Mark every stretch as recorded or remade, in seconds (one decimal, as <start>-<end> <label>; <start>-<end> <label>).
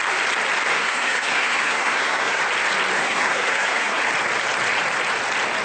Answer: 0.0-0.7 recorded; 0.7-2.4 remade; 2.4-3.0 recorded; 3.0-4.0 remade; 4.0-5.6 recorded